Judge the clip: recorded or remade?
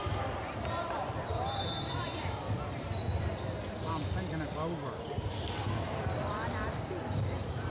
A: recorded